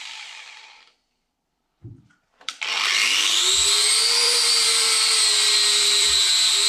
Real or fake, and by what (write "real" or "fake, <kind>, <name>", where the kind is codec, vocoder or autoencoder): fake, vocoder, BigVGAN v2